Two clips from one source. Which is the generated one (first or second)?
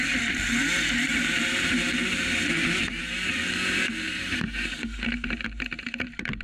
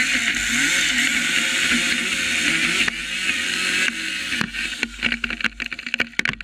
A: first